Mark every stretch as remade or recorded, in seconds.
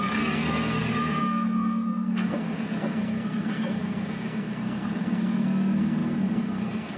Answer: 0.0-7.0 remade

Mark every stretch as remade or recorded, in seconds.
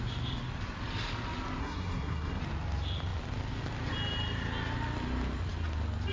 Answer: 0.0-1.6 recorded; 1.6-2.4 remade; 2.4-6.1 recorded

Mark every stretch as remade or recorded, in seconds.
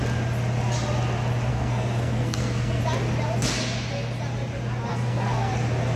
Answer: 0.0-1.5 recorded; 1.5-2.8 remade; 2.8-4.9 recorded; 4.9-5.5 remade; 5.5-6.0 recorded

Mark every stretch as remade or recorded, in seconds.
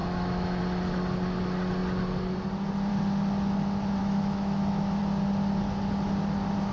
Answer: 0.0-0.6 remade; 0.6-4.0 recorded; 4.0-5.0 remade; 5.0-6.7 recorded